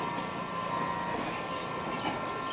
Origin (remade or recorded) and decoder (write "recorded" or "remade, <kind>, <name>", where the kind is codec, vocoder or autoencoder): recorded